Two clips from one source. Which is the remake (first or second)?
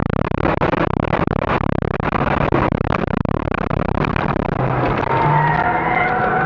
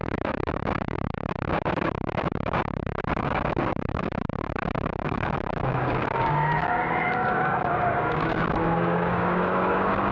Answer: second